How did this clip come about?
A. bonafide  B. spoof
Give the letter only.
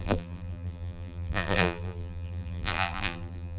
B